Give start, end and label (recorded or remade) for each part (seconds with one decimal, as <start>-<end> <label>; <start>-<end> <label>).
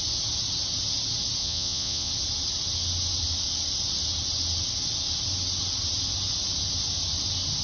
0.0-1.4 recorded; 1.4-2.1 remade; 2.1-7.6 recorded